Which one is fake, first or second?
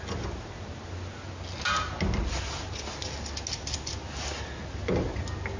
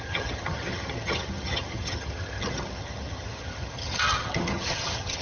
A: second